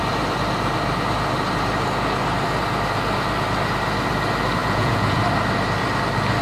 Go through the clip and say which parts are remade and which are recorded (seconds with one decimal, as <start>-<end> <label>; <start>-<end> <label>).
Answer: 0.0-4.6 recorded; 4.6-5.2 remade; 5.2-6.4 recorded

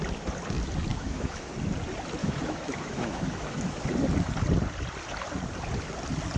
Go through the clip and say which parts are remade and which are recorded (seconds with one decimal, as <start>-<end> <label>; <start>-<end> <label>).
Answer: 0.0-0.9 recorded; 0.9-1.5 remade; 1.5-2.2 recorded; 2.2-3.9 remade; 3.9-6.4 recorded

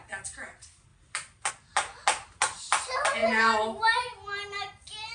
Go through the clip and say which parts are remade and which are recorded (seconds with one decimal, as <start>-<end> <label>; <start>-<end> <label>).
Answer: 0.0-5.1 recorded

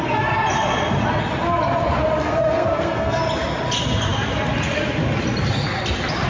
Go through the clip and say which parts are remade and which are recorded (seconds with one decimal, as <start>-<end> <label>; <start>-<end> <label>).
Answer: 0.0-2.2 recorded; 2.2-3.2 remade; 3.2-6.3 recorded

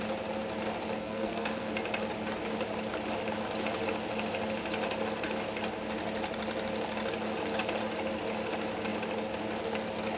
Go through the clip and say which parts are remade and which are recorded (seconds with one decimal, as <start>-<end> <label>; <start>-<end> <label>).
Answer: 0.0-1.0 recorded; 1.0-1.7 remade; 1.7-10.2 recorded

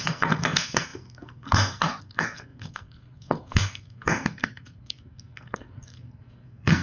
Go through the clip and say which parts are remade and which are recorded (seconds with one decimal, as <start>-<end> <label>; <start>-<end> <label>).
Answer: 0.0-6.8 remade

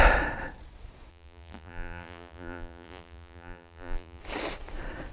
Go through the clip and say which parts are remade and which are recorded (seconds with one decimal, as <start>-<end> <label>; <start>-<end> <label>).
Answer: 0.0-1.1 recorded; 1.1-4.2 remade; 4.2-5.1 recorded